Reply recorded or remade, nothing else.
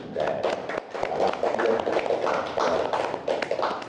recorded